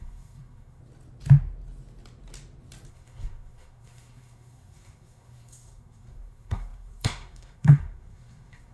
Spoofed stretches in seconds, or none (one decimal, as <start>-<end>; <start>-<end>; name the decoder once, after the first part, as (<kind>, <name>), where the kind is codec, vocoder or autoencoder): 0.0-0.8 (codec, SNAC); 2.9-8.7